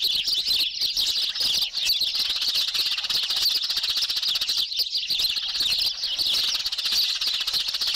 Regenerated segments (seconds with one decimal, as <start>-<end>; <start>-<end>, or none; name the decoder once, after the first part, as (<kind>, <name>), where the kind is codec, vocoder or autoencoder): none